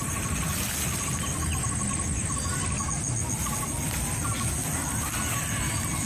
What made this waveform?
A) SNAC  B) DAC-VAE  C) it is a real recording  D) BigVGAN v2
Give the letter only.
C